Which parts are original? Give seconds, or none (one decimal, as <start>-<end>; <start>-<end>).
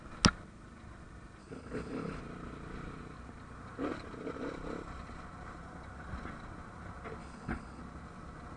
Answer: 0.0-1.4; 2.2-7.2; 7.8-8.6